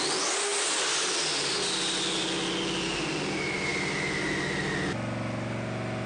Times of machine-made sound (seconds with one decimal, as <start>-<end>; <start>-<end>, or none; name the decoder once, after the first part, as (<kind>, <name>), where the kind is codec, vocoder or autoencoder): none